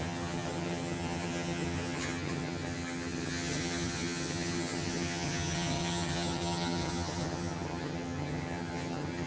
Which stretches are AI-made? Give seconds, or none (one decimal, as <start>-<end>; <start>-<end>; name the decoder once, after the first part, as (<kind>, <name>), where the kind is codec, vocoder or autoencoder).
0.0-9.3 (vocoder, HiFi-GAN)